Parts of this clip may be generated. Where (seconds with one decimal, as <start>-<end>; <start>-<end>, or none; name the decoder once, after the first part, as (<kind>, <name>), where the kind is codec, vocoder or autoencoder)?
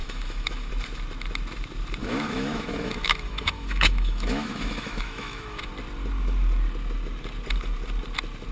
0.0-0.7 (autoencoder, DAC-VAE); 2.0-5.7